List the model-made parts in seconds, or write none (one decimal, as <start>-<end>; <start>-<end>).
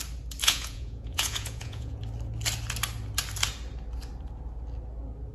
0.4-2.0